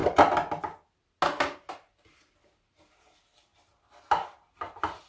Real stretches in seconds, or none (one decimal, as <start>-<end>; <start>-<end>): 0.0-5.1